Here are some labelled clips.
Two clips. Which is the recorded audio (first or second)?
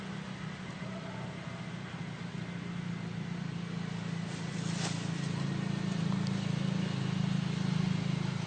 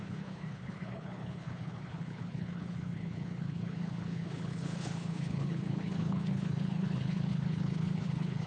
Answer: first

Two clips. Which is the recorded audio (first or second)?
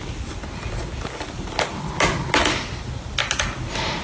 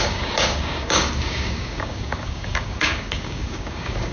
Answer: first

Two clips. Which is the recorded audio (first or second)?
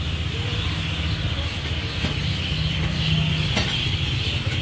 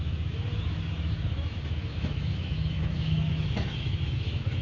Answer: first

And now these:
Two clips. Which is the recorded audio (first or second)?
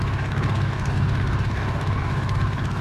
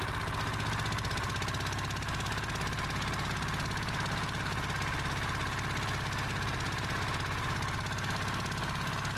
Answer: second